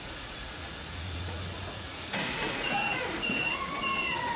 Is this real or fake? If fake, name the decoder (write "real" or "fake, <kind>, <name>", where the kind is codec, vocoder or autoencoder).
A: fake, vocoder, Vocos